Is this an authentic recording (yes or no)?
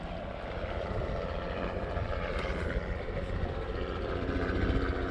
no